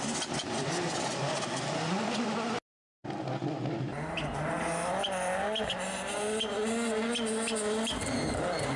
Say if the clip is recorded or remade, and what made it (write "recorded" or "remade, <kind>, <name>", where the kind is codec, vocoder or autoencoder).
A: recorded